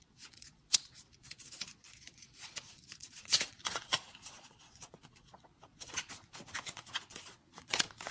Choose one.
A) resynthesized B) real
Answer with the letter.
A